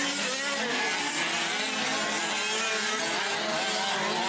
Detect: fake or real real